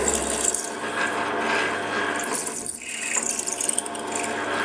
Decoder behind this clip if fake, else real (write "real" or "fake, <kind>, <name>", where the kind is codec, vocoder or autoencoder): real